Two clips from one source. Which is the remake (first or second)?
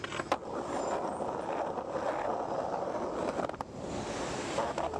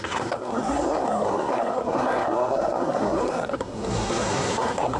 second